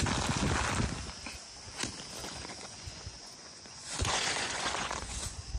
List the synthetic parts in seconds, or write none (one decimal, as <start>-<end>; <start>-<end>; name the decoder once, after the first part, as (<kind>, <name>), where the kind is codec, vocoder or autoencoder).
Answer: 2.2-5.6 (vocoder, Vocos)